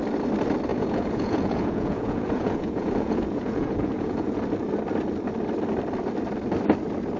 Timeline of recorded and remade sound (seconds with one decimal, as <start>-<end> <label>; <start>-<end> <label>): 0.0-0.7 recorded; 0.7-4.4 remade; 4.4-7.2 recorded